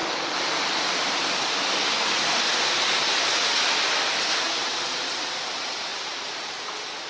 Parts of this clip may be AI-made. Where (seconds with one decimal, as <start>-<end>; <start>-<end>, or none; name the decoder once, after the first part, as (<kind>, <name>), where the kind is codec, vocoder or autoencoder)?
0.0-1.7 (vocoder, BigVGAN v2); 5.9-6.5